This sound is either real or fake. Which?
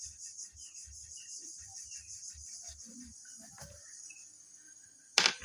real